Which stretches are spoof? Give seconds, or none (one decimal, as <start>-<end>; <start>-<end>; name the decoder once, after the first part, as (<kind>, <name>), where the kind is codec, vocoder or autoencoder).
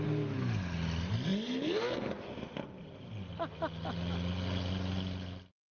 none